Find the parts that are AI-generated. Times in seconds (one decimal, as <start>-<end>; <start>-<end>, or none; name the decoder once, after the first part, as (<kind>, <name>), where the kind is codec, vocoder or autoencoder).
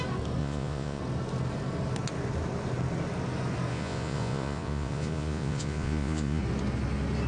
0.4-1.0 (vocoder, Vocos); 3.7-6.4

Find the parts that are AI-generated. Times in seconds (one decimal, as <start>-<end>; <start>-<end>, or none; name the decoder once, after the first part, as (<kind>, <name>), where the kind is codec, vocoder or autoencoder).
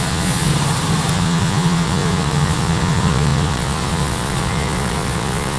0.0-0.5 (vocoder, Vocos); 1.1-5.6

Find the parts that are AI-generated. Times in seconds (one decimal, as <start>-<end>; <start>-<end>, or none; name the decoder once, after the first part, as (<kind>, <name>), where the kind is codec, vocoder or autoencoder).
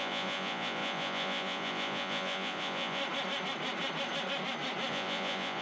0.0-3.0 (vocoder, Vocos); 4.9-5.6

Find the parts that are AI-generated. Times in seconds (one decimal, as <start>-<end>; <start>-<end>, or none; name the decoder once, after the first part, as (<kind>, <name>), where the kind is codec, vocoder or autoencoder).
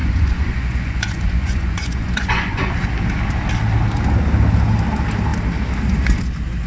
0.0-2.7 (vocoder, Vocos)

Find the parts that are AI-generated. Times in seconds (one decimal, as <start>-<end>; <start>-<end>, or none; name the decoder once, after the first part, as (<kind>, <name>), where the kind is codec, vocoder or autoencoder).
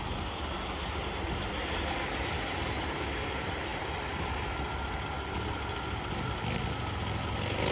none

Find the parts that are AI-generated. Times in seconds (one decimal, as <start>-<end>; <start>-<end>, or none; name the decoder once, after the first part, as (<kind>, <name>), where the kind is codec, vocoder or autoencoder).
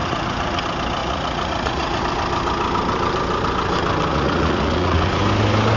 0.0-0.6 (vocoder, Vocos); 1.0-2.0; 4.1-5.2